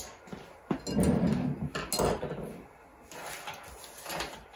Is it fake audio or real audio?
real